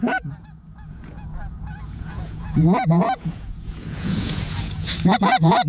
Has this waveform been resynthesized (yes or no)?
yes